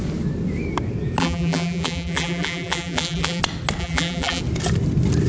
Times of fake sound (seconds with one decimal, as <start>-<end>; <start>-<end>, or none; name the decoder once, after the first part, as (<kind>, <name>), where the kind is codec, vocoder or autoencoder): 1.2-3.4 (vocoder, BigVGAN v2); 3.8-4.4